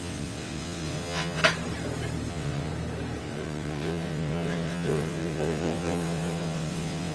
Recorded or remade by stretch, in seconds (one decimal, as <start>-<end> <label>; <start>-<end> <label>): 0.0-1.4 remade; 1.4-2.3 recorded; 2.3-2.7 remade; 2.7-3.2 recorded; 3.2-7.1 remade

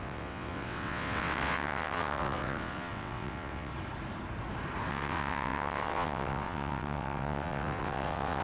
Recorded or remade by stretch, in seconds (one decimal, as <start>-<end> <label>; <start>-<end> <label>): 0.0-3.7 remade; 3.7-4.9 recorded; 4.9-8.4 remade

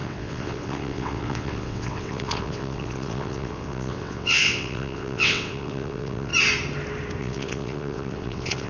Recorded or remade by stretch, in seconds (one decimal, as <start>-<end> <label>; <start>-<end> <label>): 0.0-6.3 remade; 6.3-7.2 recorded; 7.2-8.7 remade

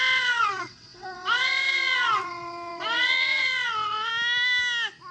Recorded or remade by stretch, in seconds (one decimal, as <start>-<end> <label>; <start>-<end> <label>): 0.0-4.1 remade; 4.1-5.1 recorded

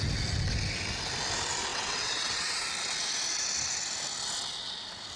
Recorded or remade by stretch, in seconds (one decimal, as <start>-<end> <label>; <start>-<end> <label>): 0.0-1.7 recorded; 1.7-2.6 remade; 2.6-5.2 recorded

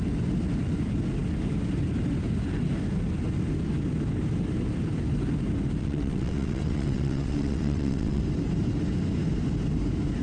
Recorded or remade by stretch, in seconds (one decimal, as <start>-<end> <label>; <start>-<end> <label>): 0.0-5.8 recorded; 5.8-8.2 remade; 8.2-10.2 recorded